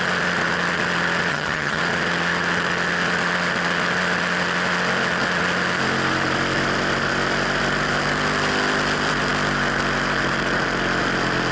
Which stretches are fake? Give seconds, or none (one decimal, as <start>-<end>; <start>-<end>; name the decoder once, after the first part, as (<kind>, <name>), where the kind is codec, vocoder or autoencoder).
1.3-1.8 (vocoder, HiFi-GAN)